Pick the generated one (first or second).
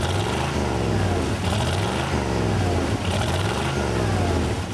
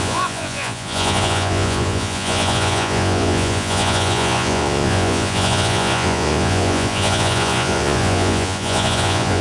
second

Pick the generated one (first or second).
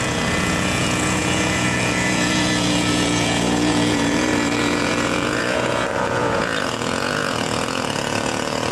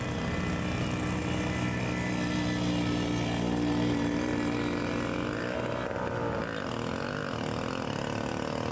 first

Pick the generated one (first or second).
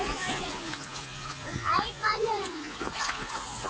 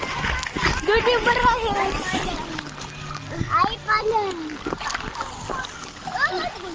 first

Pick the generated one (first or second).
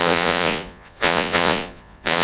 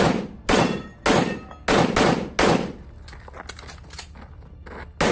first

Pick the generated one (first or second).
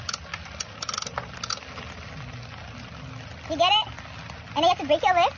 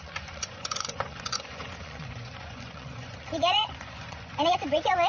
second